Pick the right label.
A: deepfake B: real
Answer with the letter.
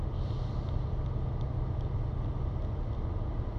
B